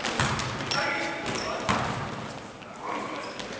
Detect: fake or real real